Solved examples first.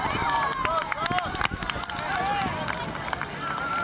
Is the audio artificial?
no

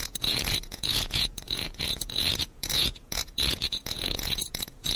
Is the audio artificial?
yes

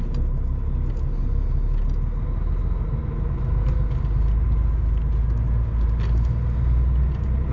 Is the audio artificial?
no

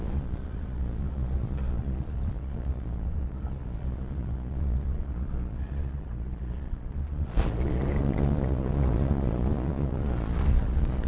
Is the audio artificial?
yes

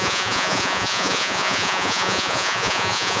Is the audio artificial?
yes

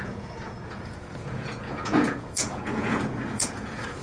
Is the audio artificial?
yes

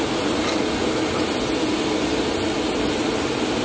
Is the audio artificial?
no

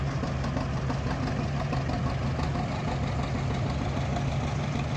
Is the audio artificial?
no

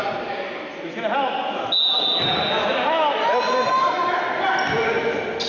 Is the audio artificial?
no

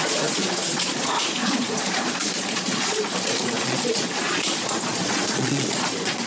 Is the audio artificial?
yes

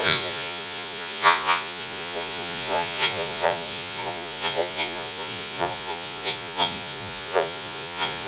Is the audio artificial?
yes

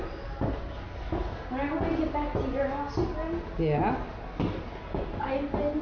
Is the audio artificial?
no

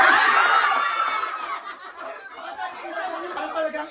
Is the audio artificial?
no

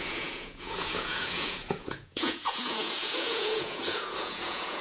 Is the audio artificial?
yes